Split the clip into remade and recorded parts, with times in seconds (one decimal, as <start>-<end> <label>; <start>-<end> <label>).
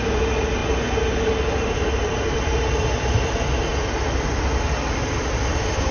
0.0-5.9 recorded